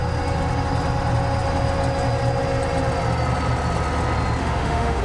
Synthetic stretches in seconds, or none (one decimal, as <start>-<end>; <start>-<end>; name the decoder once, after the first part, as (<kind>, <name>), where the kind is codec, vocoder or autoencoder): 4.4-5.0 (autoencoder, DAC-VAE)